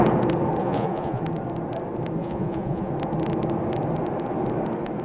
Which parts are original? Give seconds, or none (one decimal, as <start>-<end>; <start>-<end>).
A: 0.0-0.6; 1.2-2.2; 2.9-5.0